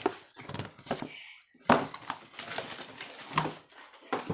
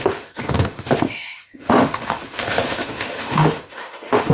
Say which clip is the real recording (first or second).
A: first